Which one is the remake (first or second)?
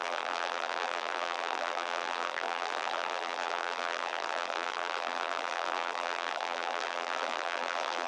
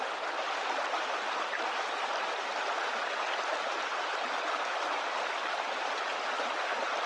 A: first